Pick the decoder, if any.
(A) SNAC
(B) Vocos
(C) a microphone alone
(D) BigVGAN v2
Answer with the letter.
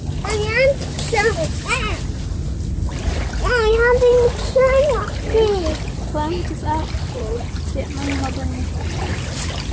C